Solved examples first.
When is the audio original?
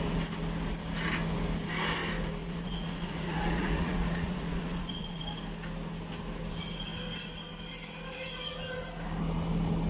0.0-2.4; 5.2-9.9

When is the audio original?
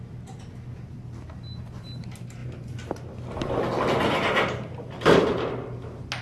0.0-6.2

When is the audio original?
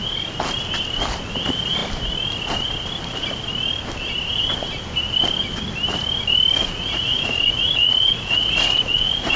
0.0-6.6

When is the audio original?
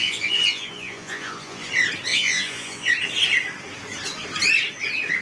1.7-2.1; 2.9-5.2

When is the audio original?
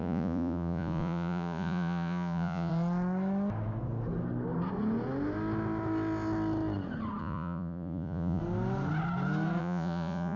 2.7-7.2; 8.4-9.6